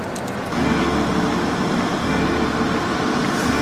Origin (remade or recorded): recorded